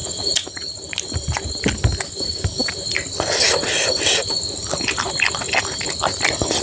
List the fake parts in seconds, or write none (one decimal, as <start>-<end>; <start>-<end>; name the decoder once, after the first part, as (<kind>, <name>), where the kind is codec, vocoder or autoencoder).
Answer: 0.0-0.5 (vocoder, Vocos)